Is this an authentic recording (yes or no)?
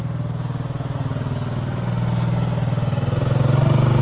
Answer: yes